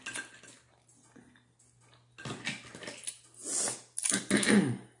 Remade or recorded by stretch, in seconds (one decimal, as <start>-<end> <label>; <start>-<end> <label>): 0.0-5.0 recorded